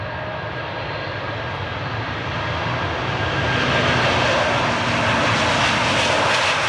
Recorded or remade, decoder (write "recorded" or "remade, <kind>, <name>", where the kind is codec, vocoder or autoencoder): recorded